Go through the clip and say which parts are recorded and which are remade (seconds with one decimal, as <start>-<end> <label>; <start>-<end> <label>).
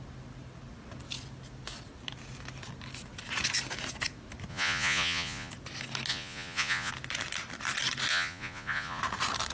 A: 0.0-4.5 recorded; 4.5-5.5 remade; 5.5-6.1 recorded; 6.1-6.9 remade; 6.9-8.1 recorded; 8.1-9.0 remade; 9.0-9.5 recorded